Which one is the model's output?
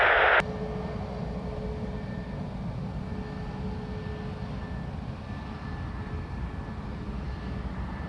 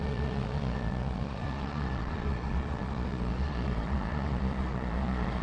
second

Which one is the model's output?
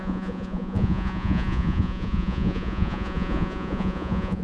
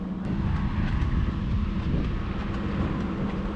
first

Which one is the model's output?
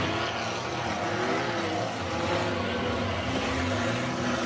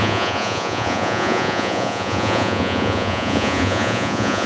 second